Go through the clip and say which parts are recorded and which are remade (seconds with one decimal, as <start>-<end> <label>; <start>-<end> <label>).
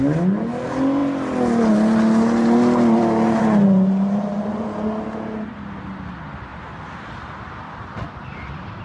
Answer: 0.0-8.8 recorded